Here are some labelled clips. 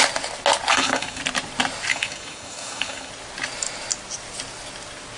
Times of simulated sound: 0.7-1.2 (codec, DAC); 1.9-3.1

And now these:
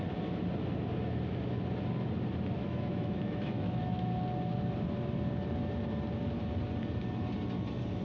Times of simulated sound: 2.6-4.1 (autoencoder, DAC-VAE)

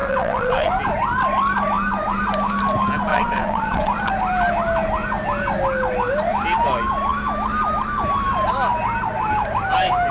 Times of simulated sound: 0.0-0.7 (vocoder, WaveNeXt); 3.1-4.1

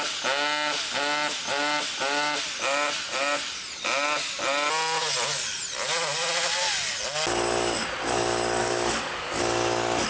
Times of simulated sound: 8.6-9.4 (codec, DAC)

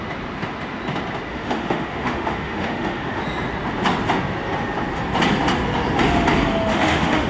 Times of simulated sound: 1.3-3.2 (autoencoder, DAC-VAE); 6.7-7.3

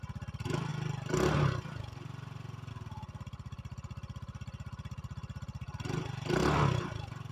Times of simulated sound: none